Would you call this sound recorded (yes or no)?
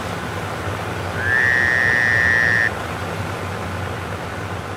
yes